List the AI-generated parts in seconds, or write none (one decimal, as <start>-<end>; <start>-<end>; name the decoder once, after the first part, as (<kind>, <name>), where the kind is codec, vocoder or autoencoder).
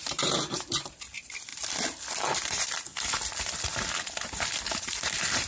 0.0-1.5 (vocoder, BigVGAN v2); 2.2-2.9; 4.8-5.5